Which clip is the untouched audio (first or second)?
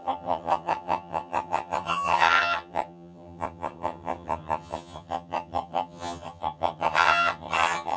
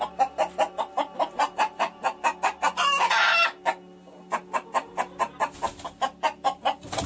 second